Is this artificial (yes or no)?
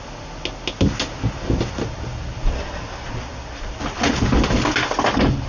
no